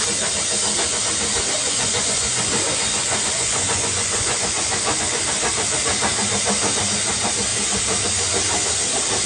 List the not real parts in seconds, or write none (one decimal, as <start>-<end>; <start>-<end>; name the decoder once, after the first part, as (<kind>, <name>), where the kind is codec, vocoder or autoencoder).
1.6-5.3 (vocoder, Vocos)